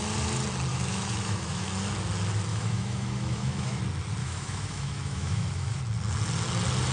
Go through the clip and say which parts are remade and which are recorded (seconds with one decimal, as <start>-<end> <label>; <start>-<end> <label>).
0.0-0.7 recorded; 0.7-1.7 remade; 1.7-2.5 recorded; 2.5-3.8 remade; 3.8-4.2 recorded; 4.2-5.8 remade; 5.8-6.9 recorded